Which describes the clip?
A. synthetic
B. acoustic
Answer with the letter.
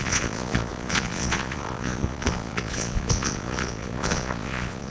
A